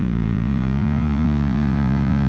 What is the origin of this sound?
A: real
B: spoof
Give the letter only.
B